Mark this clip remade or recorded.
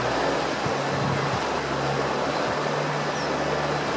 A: recorded